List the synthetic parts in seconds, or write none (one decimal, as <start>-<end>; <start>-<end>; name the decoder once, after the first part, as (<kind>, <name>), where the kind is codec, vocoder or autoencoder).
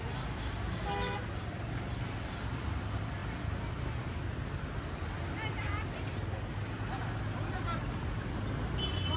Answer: none